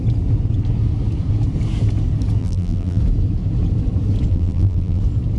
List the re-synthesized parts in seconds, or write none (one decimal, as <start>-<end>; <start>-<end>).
2.4-3.0; 4.3-5.0